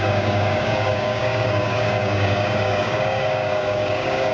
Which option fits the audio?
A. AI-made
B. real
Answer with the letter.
A